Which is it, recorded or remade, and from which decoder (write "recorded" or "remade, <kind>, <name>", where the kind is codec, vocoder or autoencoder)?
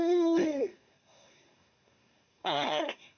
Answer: remade, codec, SNAC